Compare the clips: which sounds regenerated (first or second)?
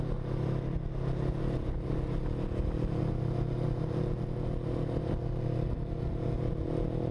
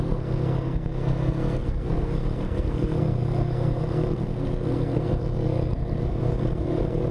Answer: second